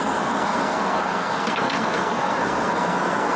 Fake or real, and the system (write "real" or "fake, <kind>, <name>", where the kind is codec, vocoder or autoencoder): fake, codec, SNAC